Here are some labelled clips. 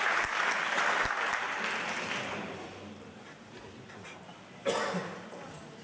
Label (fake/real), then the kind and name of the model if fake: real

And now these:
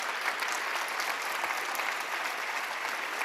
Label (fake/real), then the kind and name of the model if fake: real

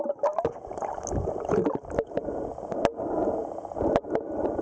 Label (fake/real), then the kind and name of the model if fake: real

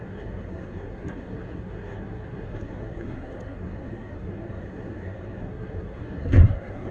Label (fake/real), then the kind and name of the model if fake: fake, codec, SNAC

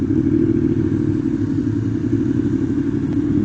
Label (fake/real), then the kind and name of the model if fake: real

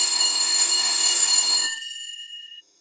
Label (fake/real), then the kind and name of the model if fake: fake, autoencoder, DAC-VAE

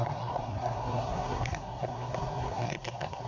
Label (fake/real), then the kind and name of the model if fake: fake, codec, SNAC